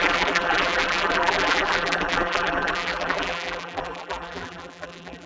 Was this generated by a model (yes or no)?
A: yes